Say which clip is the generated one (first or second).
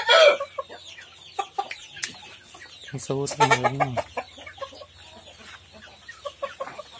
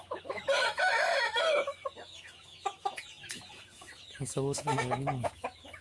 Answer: second